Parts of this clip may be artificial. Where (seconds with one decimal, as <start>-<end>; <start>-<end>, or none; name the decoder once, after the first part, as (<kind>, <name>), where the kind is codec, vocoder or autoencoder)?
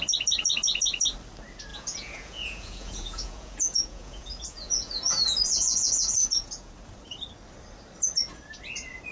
1.7-6.7 (vocoder, Vocos)